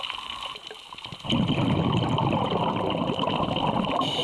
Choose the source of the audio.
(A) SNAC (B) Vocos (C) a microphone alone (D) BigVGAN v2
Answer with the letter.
C